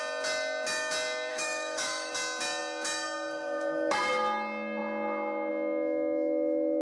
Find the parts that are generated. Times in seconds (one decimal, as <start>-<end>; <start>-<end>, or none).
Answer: 1.3-2.1